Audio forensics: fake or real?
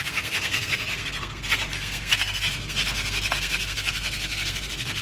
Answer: fake